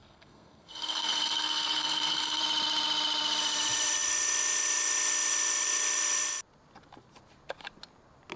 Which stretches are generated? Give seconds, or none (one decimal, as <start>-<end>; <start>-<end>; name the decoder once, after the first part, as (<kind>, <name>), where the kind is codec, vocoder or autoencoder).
0.0-2.4 (codec, SNAC)